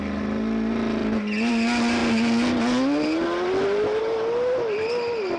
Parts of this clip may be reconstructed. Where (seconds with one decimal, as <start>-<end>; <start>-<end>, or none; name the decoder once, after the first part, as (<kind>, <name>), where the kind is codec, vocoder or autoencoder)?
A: none